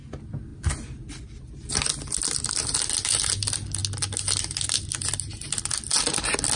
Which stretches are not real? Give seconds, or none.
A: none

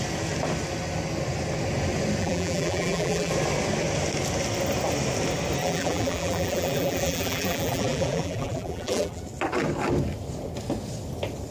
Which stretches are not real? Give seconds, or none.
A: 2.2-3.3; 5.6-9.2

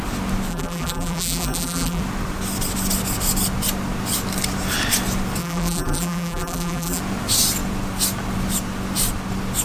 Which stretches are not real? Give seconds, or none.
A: 0.5-2.0; 5.4-7.0

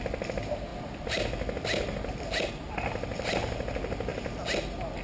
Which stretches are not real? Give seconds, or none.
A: none